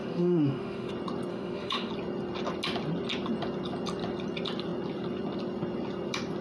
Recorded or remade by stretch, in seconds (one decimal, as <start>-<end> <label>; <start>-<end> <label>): 0.0-0.9 remade; 0.9-1.3 recorded; 1.3-1.9 remade; 1.9-6.4 recorded